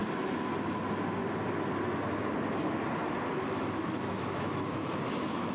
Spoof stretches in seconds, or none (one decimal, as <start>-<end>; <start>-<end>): 3.3-5.5